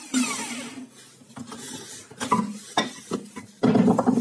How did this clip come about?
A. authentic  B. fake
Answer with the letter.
A